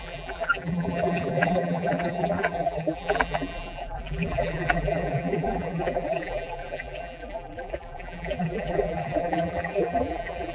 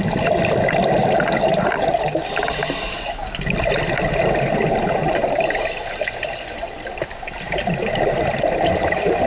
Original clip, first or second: second